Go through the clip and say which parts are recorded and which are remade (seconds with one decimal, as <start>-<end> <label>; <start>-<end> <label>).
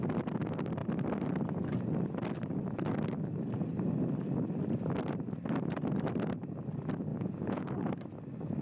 0.0-7.1 recorded; 7.1-7.7 remade; 7.7-8.6 recorded